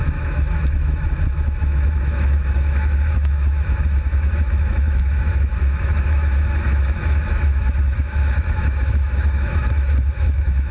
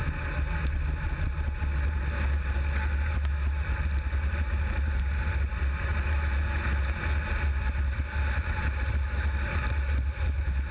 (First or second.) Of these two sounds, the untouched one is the second